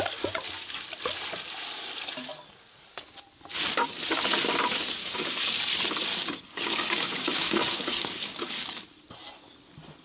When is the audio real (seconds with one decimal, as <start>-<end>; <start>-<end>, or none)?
0.0-5.0; 5.5-6.1; 8.8-10.0